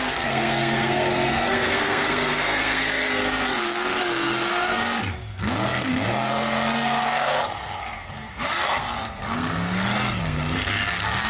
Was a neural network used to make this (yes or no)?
yes